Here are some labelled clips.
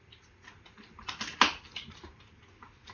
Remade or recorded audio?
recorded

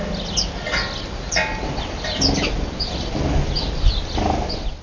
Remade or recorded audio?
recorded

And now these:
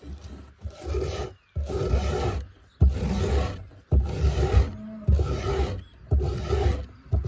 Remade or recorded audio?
recorded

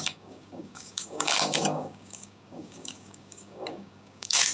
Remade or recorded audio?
remade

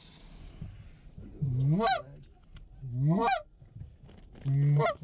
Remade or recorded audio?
recorded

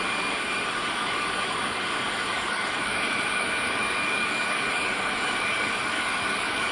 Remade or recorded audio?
remade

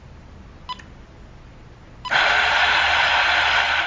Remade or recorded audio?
recorded